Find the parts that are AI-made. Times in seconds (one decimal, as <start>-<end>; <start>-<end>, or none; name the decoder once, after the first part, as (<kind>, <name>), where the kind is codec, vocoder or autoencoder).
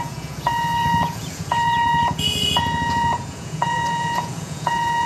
0.0-5.1 (vocoder, Vocos)